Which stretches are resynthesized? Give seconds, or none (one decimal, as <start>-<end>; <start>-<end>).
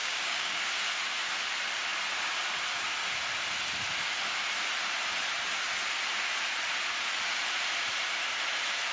0.0-0.6